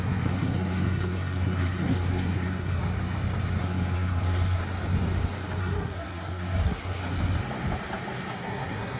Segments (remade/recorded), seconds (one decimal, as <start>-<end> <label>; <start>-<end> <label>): 0.0-2.8 remade; 2.8-3.6 recorded; 3.6-4.6 remade; 4.6-5.6 recorded; 5.6-7.0 remade; 7.0-8.3 recorded; 8.3-9.0 remade